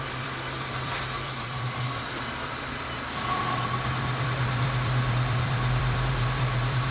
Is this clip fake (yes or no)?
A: yes